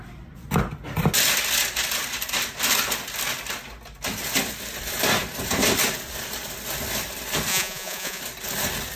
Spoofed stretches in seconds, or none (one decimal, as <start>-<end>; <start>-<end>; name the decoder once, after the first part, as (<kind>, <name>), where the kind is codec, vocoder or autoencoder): 7.5-8.2 (vocoder, Vocos)